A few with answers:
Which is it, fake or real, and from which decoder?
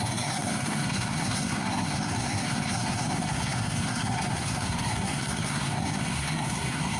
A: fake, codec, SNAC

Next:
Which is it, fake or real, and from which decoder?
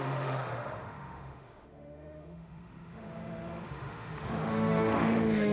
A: fake, autoencoder, DAC-VAE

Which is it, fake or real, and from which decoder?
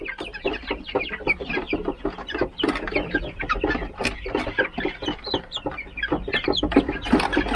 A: fake, vocoder, BigVGAN v2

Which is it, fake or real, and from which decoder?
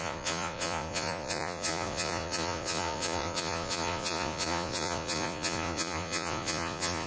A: fake, vocoder, Vocos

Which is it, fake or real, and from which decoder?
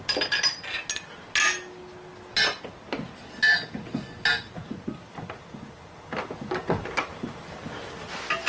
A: real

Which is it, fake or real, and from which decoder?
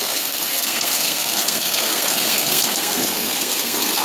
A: fake, codec, SNAC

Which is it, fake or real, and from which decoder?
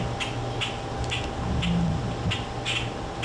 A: real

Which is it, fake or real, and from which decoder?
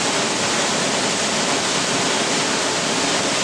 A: real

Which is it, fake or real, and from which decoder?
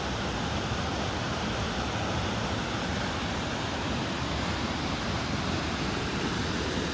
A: real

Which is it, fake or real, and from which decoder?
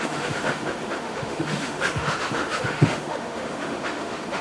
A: fake, autoencoder, DAC-VAE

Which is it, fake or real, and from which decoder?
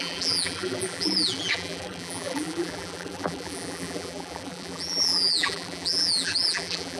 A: fake, vocoder, BigVGAN v2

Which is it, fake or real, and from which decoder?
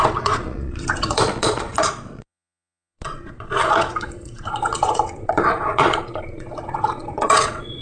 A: fake, vocoder, Vocos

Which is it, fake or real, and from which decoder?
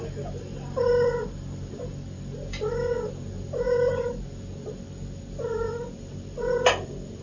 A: real